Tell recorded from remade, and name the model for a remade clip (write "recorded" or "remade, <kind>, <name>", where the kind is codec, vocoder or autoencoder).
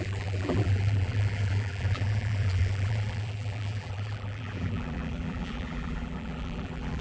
remade, vocoder, BigVGAN v2